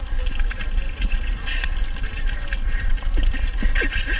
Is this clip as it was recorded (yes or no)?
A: yes